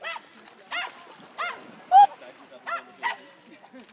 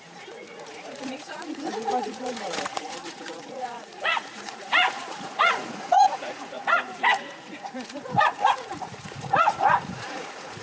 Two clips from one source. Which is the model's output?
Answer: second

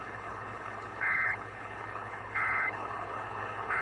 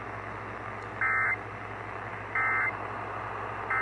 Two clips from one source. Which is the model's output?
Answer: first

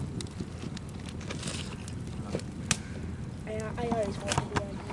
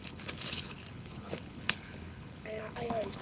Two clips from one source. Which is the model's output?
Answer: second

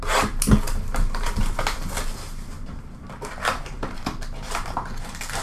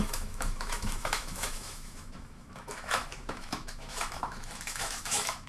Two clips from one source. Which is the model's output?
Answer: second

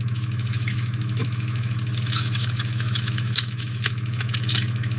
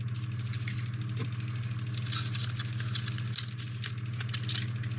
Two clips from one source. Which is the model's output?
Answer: first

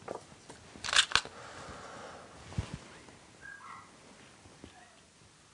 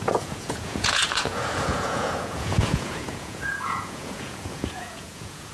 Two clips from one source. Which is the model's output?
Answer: second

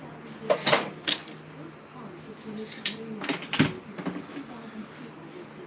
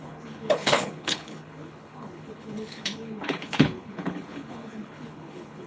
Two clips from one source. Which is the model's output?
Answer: second